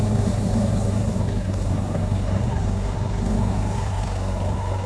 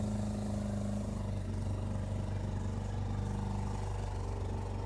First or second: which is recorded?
second